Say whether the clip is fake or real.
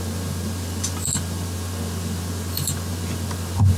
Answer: real